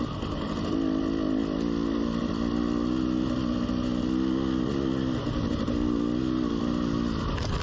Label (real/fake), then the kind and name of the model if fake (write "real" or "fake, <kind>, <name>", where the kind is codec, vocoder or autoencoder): real